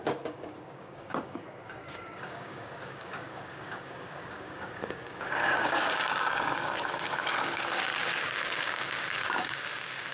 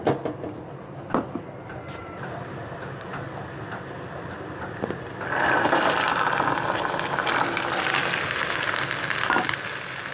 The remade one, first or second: first